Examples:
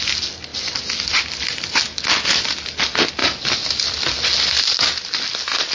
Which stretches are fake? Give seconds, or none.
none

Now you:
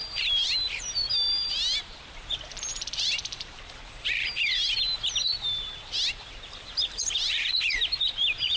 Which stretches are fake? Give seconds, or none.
0.0-8.6 (vocoder, BigVGAN v2)

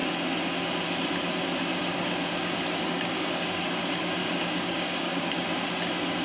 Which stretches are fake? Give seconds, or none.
1.9-3.7 (codec, DAC); 4.2-5.5

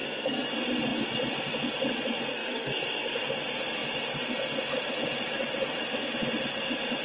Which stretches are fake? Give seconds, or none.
0.0-0.5 (codec, SNAC); 2.3-3.2

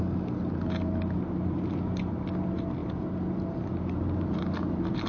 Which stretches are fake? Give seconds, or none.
none